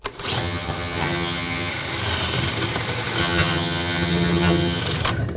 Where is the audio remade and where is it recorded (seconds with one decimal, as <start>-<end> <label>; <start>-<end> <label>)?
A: 0.0-0.4 recorded; 0.4-1.7 remade; 1.7-3.2 recorded; 3.2-4.8 remade; 4.8-5.4 recorded